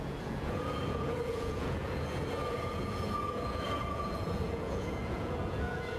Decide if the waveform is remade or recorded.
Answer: remade